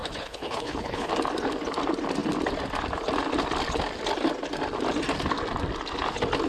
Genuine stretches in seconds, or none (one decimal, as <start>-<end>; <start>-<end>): 1.1-6.5